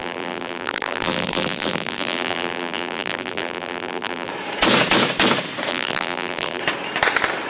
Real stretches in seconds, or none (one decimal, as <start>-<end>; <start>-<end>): 4.3-5.7; 6.6-7.5